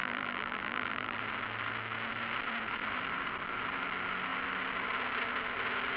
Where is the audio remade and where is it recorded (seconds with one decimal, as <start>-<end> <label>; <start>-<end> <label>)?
0.0-1.2 remade; 1.2-6.0 recorded